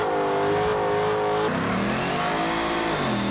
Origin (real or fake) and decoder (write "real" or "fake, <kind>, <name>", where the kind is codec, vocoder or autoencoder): real